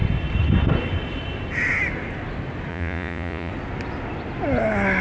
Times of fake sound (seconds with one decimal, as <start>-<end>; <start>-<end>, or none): 2.7-3.5